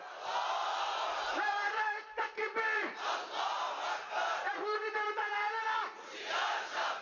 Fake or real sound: fake